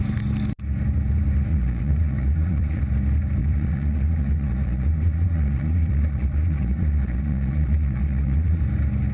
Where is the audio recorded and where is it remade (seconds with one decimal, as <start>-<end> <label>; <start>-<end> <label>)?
0.0-1.5 recorded; 1.5-2.8 remade; 2.8-3.4 recorded; 3.4-8.6 remade; 8.6-9.1 recorded